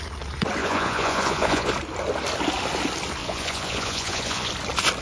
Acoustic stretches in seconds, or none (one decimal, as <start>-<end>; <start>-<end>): 0.0-0.6; 1.7-3.2; 4.5-5.0